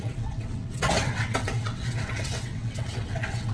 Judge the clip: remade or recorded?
remade